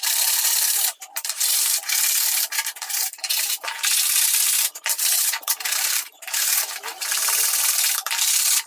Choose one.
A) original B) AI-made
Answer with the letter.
B